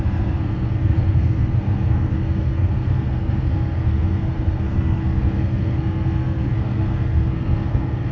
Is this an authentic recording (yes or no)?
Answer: no